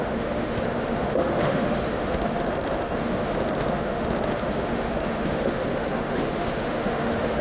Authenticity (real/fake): fake